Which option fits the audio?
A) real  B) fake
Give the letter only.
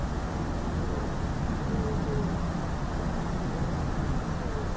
A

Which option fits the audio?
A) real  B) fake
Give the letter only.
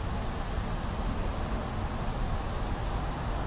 B